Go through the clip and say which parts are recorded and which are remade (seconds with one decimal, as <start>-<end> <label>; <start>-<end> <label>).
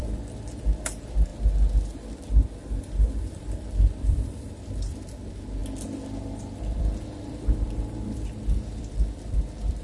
0.0-1.3 remade; 1.3-2.9 recorded; 2.9-5.6 remade; 5.6-6.4 recorded; 6.4-9.8 remade